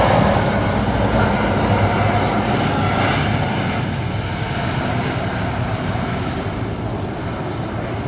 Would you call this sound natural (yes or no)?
yes